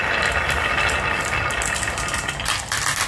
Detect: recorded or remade recorded